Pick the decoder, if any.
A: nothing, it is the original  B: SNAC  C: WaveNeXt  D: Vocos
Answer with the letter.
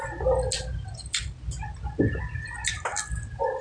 A